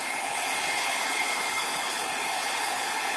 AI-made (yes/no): yes